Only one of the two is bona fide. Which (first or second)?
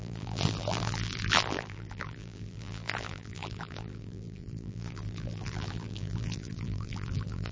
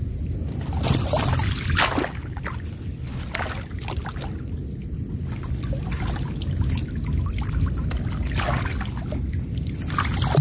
second